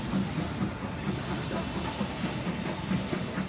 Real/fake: real